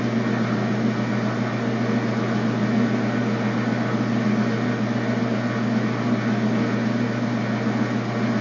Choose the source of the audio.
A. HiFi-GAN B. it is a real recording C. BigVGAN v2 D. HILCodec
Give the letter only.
B